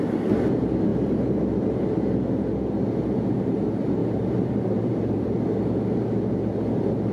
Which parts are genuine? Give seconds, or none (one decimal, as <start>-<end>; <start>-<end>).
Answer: 0.0-4.0; 5.4-7.1